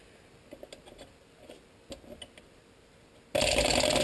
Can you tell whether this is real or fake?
real